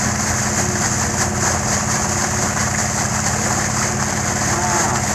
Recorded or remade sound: recorded